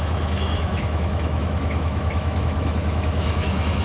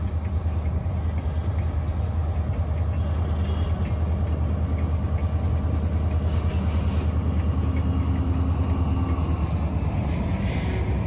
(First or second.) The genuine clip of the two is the second